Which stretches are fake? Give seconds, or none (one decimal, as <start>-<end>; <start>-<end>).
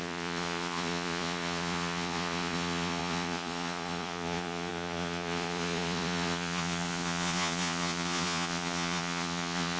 0.0-9.8